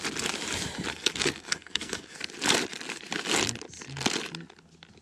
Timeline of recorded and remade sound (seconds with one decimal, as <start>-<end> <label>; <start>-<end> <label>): 0.0-0.9 recorded; 0.9-2.2 remade; 2.2-5.0 recorded